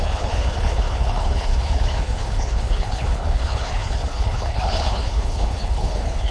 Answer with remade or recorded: remade